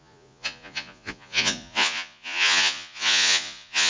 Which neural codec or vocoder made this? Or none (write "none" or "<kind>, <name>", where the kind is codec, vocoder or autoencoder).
vocoder, Vocos